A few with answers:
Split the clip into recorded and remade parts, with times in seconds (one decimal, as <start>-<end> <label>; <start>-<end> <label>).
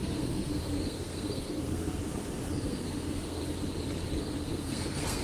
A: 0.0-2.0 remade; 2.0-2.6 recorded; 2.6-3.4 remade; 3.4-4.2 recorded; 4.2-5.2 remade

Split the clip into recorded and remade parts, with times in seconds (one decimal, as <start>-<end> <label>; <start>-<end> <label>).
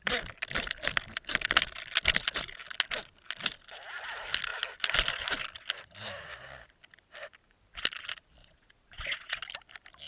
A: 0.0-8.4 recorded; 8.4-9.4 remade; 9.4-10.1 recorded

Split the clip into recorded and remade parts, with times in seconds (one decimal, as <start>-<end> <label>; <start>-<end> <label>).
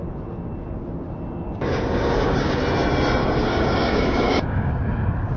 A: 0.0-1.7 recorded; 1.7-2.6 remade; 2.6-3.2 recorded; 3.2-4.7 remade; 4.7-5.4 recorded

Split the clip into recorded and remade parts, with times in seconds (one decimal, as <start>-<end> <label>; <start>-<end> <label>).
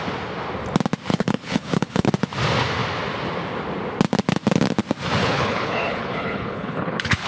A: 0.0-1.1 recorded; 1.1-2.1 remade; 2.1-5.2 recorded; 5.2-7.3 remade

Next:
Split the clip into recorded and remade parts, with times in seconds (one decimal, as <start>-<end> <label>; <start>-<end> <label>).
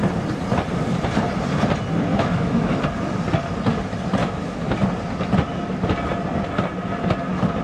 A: 0.0-2.1 recorded; 2.1-2.8 remade; 2.8-4.2 recorded; 4.2-4.7 remade; 4.7-7.6 recorded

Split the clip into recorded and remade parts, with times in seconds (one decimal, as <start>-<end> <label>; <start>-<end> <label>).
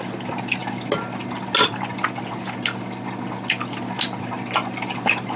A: 0.0-5.4 recorded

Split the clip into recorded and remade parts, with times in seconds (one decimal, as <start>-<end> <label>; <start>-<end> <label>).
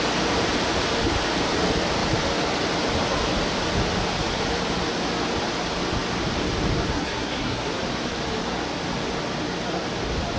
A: 0.0-6.9 recorded; 6.9-7.7 remade; 7.7-10.4 recorded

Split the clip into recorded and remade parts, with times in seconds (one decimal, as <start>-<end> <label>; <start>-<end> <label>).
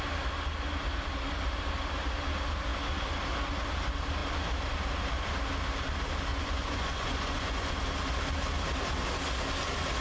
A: 0.0-6.3 recorded; 6.3-7.7 remade; 7.7-10.0 recorded